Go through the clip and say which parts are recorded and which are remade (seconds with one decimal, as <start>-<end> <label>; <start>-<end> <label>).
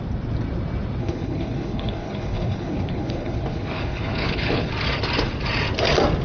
0.0-1.0 recorded; 1.0-4.7 remade; 4.7-6.2 recorded